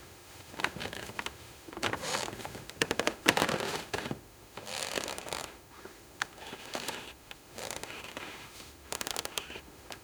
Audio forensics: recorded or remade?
remade